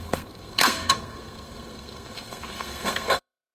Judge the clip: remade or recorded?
remade